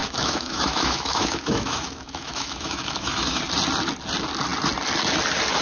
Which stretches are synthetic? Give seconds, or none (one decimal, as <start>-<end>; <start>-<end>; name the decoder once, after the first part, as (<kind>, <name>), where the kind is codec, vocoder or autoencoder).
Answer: 0.0-3.4 (autoencoder, DAC-VAE)